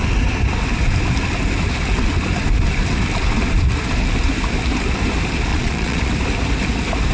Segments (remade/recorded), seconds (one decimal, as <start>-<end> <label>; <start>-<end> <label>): 0.0-5.5 recorded; 5.5-6.1 remade; 6.1-7.1 recorded